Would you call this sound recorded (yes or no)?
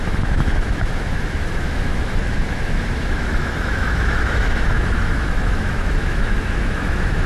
no